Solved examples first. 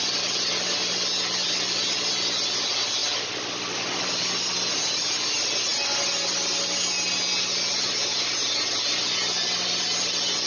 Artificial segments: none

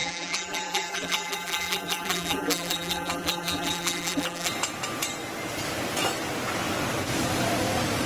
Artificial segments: 0.0-4.5 (vocoder, BigVGAN v2)

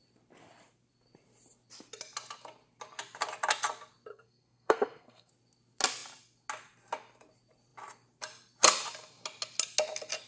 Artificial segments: 4.1-5.3 (codec, SNAC)

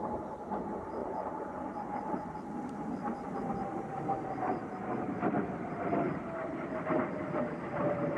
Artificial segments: 1.0-2.3 (vocoder, Vocos)